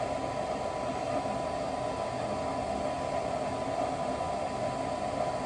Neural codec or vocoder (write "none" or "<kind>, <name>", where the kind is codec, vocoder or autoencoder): none